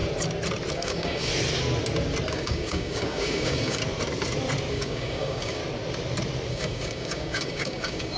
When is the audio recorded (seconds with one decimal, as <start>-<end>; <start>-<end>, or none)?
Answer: 0.0-0.7; 1.3-2.3; 3.8-4.7; 5.6-6.5